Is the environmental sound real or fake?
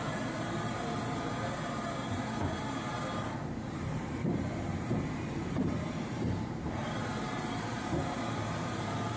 fake